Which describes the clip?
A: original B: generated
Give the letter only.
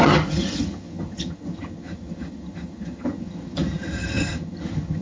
B